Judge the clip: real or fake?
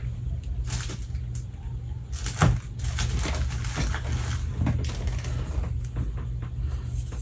real